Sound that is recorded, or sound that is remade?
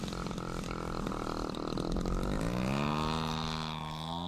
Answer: recorded